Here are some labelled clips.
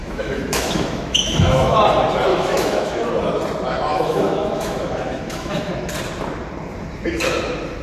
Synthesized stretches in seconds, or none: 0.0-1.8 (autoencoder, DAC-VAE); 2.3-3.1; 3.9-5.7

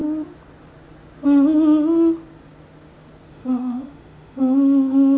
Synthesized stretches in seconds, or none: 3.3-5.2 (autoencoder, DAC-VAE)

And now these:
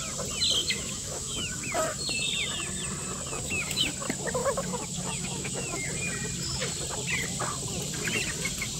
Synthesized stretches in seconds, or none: 0.6-1.8 (autoencoder, DAC-VAE); 3.3-3.9; 4.4-5.9